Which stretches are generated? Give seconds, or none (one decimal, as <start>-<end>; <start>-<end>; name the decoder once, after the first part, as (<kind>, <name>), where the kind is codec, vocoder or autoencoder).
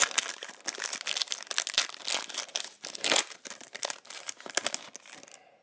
none